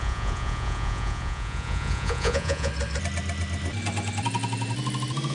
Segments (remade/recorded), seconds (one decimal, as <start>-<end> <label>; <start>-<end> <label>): 0.0-2.7 remade; 2.7-5.3 recorded